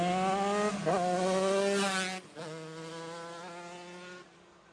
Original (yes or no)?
yes